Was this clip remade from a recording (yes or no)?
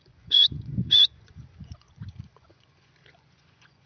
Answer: yes